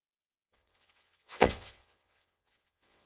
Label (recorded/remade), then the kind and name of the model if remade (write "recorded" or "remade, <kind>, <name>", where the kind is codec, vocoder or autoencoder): remade, vocoder, WaveNeXt